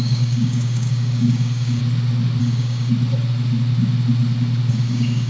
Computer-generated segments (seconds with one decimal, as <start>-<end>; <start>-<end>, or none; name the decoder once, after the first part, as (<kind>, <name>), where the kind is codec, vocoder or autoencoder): 0.0-1.8 (codec, DAC); 2.4-2.9; 4.7-5.3